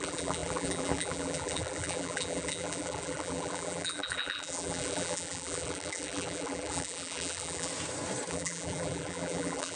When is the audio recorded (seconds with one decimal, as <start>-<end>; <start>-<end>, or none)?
7.7-8.3